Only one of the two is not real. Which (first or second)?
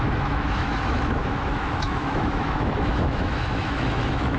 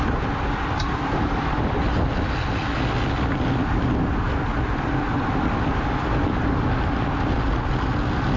first